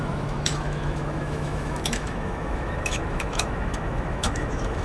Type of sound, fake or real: fake